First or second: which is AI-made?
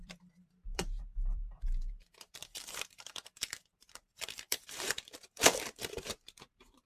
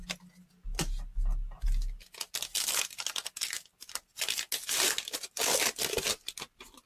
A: first